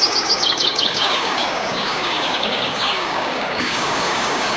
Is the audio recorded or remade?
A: remade